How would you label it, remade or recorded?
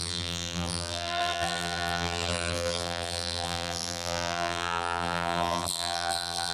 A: remade